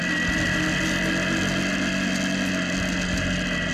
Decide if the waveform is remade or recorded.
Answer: recorded